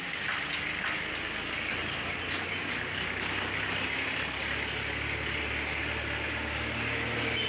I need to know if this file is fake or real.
real